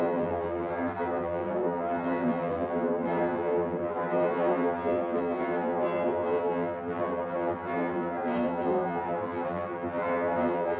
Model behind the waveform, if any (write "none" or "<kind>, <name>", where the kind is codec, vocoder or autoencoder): vocoder, BigVGAN v2